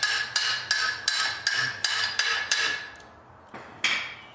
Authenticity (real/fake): real